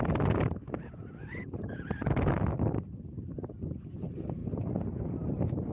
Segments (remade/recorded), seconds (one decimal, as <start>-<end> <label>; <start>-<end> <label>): 0.0-5.7 recorded